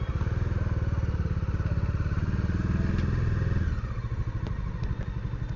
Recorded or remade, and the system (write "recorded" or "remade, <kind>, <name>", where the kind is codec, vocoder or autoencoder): recorded